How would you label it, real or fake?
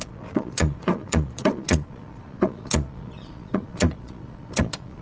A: fake